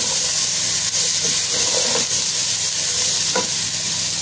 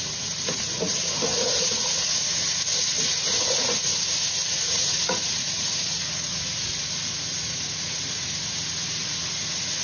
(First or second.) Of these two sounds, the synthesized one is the second